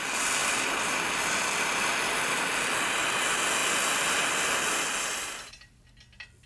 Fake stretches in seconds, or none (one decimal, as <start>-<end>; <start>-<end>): 0.4-2.2